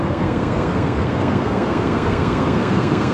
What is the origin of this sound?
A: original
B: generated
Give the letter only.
B